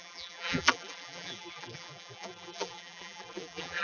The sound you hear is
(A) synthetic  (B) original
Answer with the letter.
A